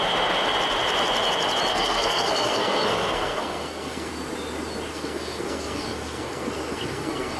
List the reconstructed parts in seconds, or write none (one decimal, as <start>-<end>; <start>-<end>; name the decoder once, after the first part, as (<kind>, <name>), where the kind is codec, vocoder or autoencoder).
1.7-4.1 (codec, SNAC); 4.9-7.4